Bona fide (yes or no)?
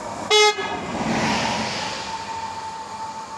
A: yes